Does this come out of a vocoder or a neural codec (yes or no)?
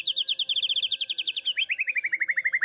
no